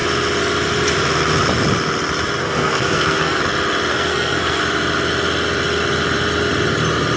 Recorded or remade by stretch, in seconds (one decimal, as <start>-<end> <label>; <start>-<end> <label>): 0.0-2.4 recorded; 2.4-3.4 remade; 3.4-3.9 recorded; 3.9-4.6 remade; 4.6-7.2 recorded